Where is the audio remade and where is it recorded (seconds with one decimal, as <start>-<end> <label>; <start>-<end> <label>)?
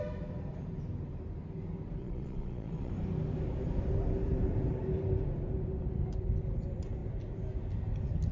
0.0-2.0 recorded; 2.0-2.9 remade; 2.9-8.3 recorded